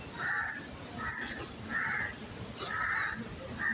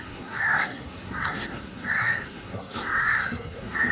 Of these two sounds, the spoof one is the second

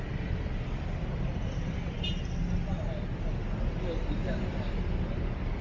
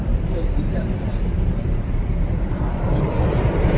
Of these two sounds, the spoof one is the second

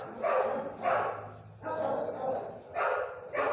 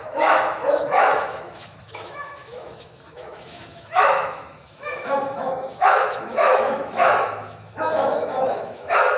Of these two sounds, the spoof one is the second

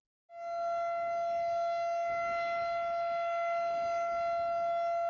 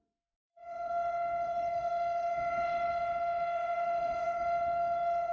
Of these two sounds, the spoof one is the second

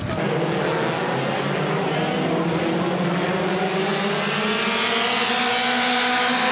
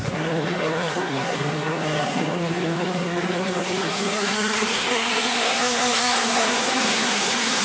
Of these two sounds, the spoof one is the second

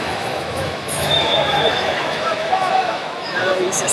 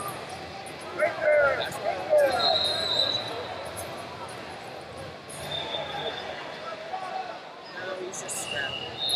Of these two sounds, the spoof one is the first